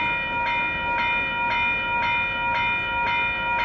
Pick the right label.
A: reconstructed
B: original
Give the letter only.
B